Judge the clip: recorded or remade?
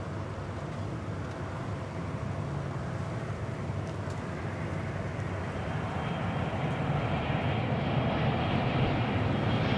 recorded